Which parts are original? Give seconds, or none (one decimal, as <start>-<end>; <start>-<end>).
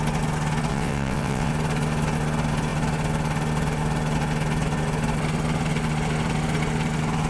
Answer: 0.0-0.7; 1.5-7.3